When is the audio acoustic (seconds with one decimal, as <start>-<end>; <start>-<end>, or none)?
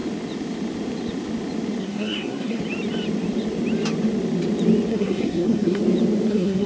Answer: 0.0-1.8; 2.6-4.9; 5.8-6.3